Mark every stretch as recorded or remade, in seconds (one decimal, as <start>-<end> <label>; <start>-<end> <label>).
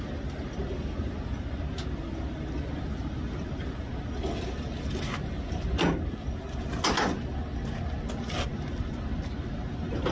0.0-10.1 recorded